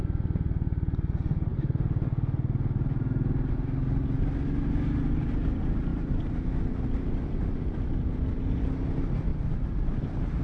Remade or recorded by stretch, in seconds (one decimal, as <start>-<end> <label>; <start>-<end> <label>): 0.0-9.3 recorded; 9.3-10.4 remade